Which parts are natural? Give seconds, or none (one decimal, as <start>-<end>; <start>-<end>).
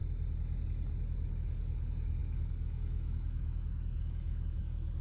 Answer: 0.0-1.3